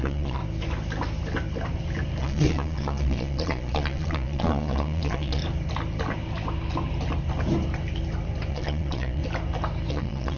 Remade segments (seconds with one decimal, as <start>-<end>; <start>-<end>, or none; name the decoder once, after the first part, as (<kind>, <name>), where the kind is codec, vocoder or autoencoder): 0.0-0.4 (vocoder, Vocos); 2.2-5.4; 8.5-9.2; 9.9-10.4